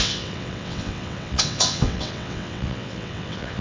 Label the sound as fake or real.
fake